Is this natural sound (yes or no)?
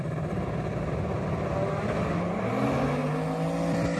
yes